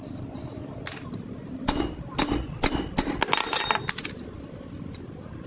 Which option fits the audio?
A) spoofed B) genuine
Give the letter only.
B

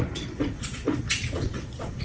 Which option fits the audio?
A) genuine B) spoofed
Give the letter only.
B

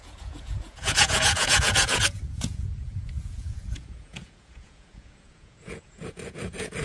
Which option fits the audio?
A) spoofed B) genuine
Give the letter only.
A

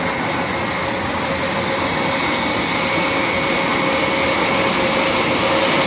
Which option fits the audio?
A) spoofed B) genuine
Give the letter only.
B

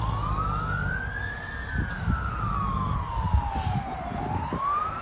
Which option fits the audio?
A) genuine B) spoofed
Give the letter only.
A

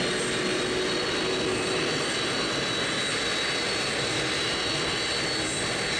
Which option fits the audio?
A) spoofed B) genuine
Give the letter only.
B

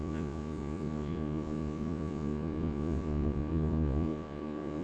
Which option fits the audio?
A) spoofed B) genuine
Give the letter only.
A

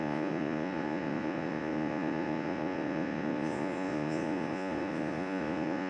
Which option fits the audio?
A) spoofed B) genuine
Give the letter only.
A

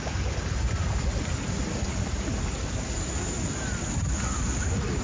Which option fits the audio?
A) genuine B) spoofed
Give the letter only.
A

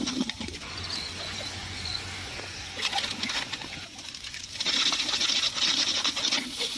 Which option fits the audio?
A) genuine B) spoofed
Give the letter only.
B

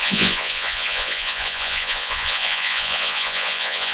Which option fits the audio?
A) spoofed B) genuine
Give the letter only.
A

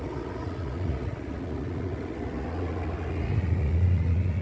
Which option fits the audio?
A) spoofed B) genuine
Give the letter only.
A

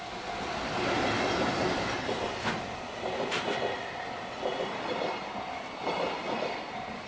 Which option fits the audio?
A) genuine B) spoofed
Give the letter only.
A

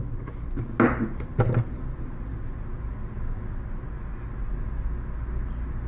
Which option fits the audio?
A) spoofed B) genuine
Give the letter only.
B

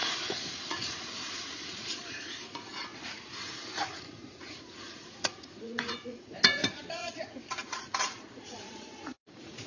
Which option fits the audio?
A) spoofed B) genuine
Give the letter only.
A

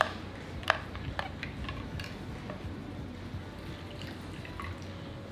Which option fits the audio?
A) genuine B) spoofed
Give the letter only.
A